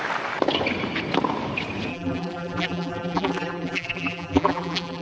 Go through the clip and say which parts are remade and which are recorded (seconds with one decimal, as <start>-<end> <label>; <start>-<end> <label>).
0.0-1.9 recorded; 1.9-5.0 remade